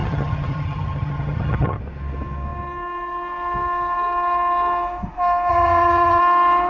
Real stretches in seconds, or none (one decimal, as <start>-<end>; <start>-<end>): 1.8-5.5; 6.2-6.7